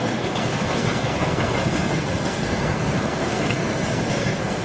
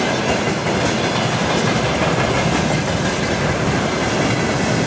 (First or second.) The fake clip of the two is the first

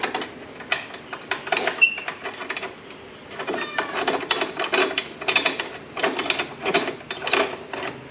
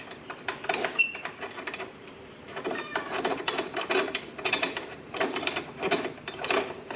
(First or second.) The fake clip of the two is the second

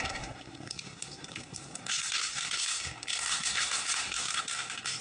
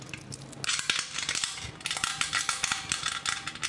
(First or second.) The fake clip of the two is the first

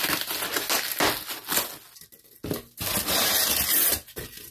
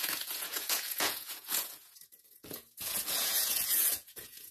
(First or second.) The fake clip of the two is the second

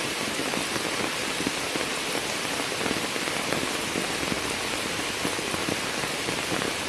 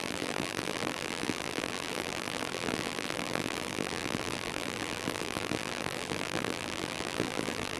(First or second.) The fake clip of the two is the second